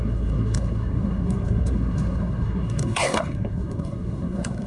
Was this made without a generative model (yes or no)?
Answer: no